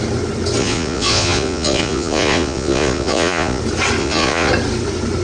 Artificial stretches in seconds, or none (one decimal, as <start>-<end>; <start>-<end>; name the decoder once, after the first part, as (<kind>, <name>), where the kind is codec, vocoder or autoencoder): 0.6-3.6 (vocoder, Vocos); 4.0-4.5